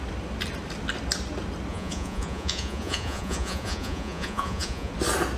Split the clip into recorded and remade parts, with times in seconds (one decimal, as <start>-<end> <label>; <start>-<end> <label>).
0.0-1.7 recorded; 1.7-4.9 remade; 4.9-5.4 recorded

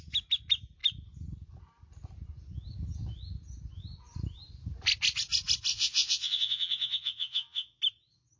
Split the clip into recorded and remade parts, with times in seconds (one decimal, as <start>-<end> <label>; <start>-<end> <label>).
0.0-5.7 recorded; 5.7-7.8 remade; 7.8-8.4 recorded

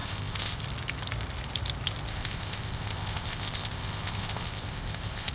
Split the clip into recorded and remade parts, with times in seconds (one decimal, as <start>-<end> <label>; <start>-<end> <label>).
0.0-0.6 remade; 0.6-2.1 recorded; 2.1-5.3 remade

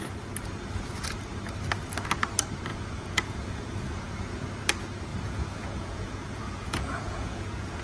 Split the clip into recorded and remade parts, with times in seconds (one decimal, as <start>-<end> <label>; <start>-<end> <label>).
0.0-2.7 recorded; 2.7-4.5 remade; 4.5-5.1 recorded; 5.1-7.8 remade

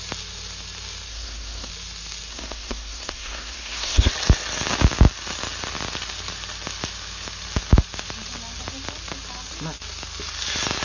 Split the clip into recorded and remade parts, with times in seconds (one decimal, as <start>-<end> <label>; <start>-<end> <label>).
0.0-1.1 recorded; 1.1-1.7 remade; 1.7-2.3 recorded; 2.3-4.1 remade; 4.1-10.8 recorded